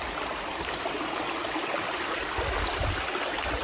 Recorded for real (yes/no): yes